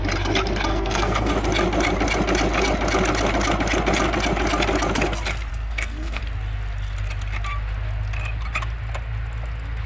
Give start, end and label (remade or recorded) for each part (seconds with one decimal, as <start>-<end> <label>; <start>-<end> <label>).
0.0-0.7 recorded; 0.7-1.3 remade; 1.3-5.5 recorded; 5.5-6.2 remade; 6.2-9.9 recorded